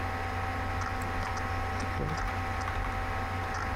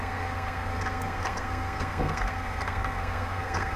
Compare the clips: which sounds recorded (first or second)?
first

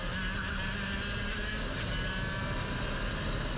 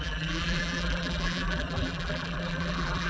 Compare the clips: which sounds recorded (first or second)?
first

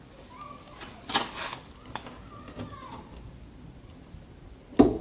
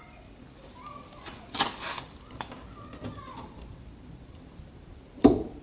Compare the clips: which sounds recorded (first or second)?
first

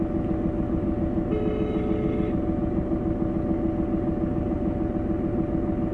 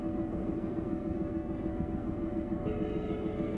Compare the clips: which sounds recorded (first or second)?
first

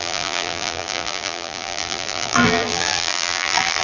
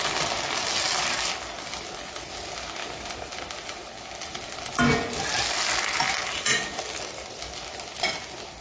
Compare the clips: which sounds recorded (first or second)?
second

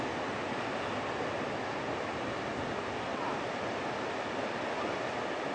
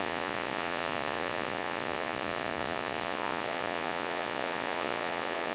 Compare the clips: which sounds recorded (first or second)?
first